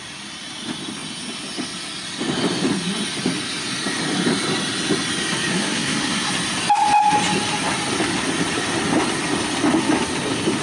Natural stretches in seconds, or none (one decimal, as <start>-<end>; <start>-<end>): 0.0-5.5; 6.3-10.6